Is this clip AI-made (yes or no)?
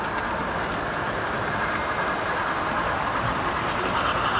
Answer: no